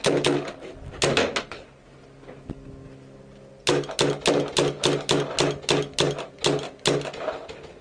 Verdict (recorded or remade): recorded